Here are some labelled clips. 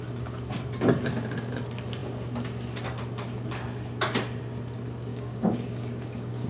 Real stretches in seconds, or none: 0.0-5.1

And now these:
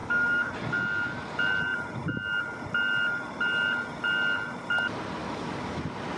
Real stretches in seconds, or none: 0.5-5.2; 5.8-6.2

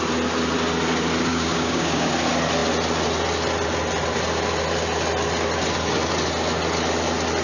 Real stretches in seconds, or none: 0.0-1.3; 2.1-7.4

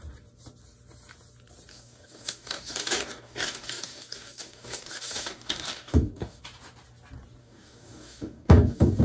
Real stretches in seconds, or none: 0.0-1.7; 6.4-7.4

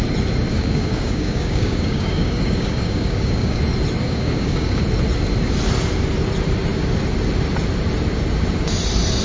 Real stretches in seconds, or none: 0.0-0.5; 3.6-4.0; 4.8-9.2